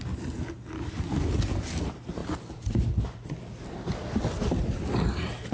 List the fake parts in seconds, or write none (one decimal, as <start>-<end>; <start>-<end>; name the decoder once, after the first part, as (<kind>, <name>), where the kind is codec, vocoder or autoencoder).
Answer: none